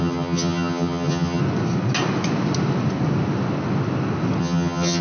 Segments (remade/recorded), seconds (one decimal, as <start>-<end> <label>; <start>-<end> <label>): 0.0-1.4 remade; 1.4-4.4 recorded; 4.4-5.0 remade